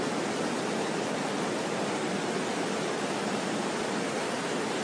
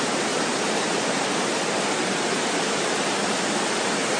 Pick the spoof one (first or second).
second